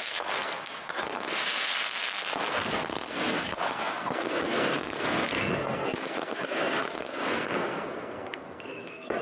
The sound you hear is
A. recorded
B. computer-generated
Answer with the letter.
B